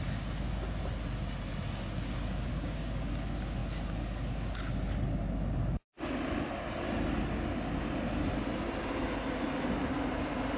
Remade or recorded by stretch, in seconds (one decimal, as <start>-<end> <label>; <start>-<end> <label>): 0.0-2.5 recorded; 2.5-3.1 remade; 3.1-10.6 recorded